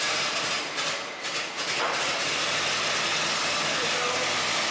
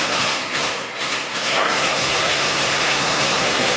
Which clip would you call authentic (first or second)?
first